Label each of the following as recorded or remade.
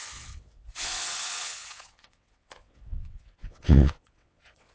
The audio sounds remade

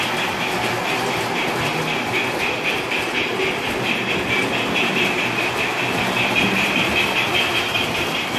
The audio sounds remade